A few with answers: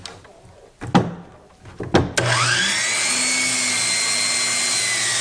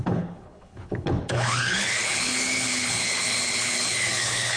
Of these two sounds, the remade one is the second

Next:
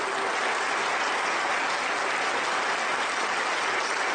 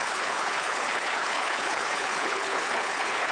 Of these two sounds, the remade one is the second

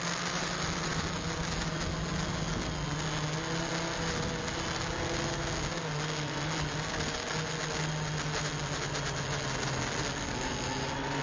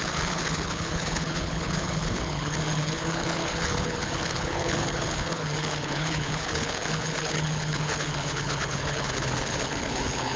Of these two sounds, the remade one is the second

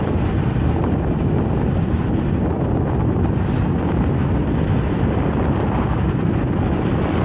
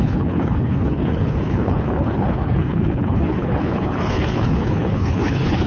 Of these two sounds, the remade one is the second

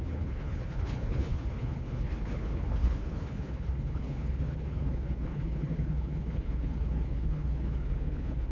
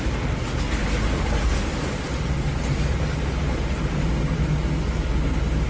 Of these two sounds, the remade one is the first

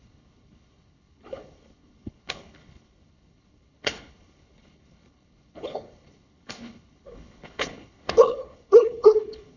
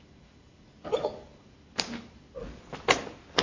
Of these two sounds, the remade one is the first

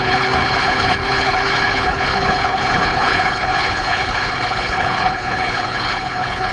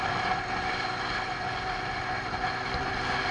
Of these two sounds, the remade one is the first